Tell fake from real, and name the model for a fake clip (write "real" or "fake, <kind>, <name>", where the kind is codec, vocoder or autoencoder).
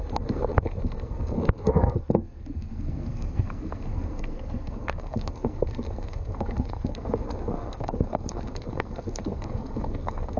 fake, codec, SNAC